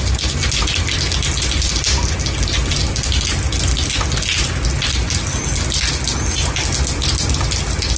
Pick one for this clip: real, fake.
real